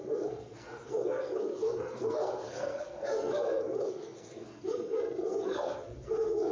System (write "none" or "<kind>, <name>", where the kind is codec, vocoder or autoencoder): codec, SNAC